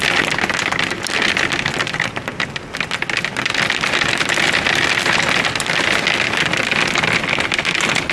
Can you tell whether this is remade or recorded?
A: recorded